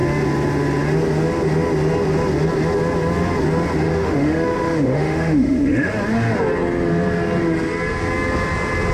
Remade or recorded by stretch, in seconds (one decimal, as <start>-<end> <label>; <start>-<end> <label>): 0.0-3.9 recorded; 3.9-5.9 remade; 5.9-8.9 recorded